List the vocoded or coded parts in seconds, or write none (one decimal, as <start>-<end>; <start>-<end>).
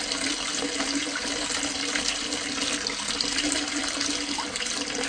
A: none